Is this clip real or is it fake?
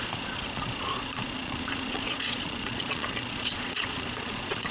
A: fake